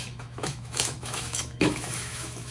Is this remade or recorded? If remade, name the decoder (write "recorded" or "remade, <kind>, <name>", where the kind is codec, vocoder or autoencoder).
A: remade, autoencoder, DAC-VAE